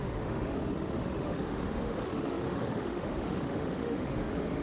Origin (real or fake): fake